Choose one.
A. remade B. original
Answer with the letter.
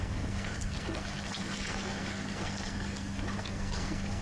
A